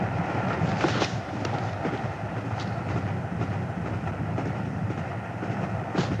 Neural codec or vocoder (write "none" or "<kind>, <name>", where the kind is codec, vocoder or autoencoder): none